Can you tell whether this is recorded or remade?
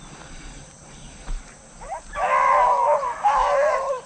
remade